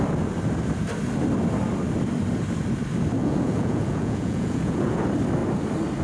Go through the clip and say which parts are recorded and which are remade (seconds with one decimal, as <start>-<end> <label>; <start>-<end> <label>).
0.0-3.2 recorded; 3.2-5.0 remade; 5.0-6.0 recorded